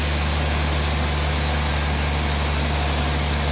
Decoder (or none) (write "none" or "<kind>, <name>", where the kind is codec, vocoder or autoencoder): none